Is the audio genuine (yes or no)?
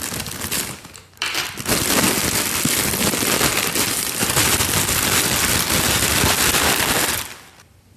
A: yes